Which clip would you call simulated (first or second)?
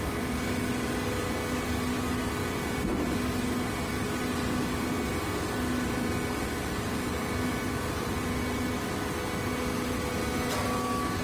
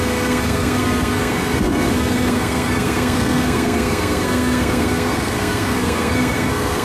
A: second